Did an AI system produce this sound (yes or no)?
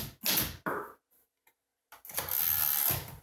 no